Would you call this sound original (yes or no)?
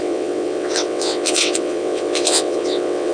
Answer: no